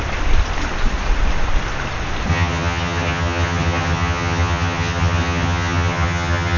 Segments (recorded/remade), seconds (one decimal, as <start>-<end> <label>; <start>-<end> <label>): 0.0-2.3 recorded; 2.3-6.6 remade